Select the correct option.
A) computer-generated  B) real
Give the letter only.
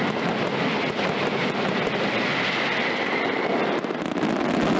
B